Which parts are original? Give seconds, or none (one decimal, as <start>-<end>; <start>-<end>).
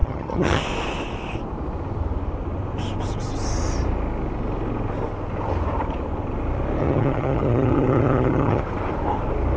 0.6-6.8; 8.6-9.6